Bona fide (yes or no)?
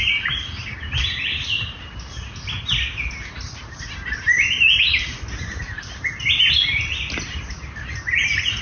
yes